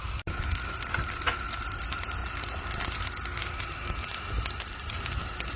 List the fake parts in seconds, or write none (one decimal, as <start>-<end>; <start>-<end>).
none